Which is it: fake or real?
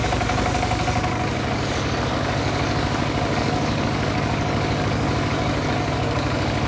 fake